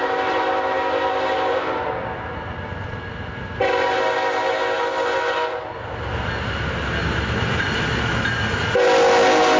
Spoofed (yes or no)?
no